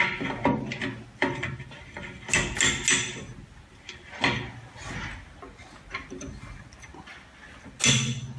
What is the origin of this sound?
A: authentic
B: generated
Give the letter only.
A